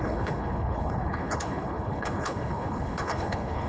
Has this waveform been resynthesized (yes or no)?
yes